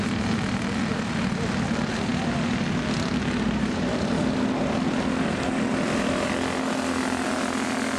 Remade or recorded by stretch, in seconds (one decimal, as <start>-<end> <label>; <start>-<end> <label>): 0.0-8.0 recorded